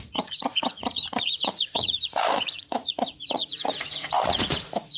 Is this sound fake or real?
fake